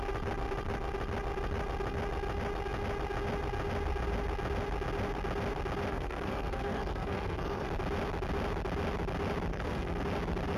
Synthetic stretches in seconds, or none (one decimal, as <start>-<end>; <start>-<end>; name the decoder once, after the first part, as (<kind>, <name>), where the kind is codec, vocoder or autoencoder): 5.9-7.7 (codec, SNAC); 9.5-10.0